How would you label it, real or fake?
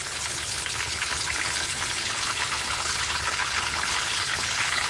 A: fake